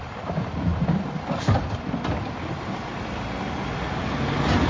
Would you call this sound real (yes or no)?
yes